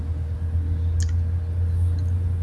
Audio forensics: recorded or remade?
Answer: recorded